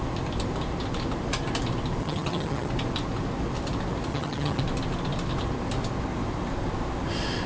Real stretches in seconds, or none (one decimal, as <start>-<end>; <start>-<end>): 0.0-2.0; 2.7-4.1; 4.6-7.5